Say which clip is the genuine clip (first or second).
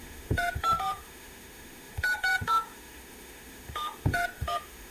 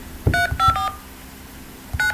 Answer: second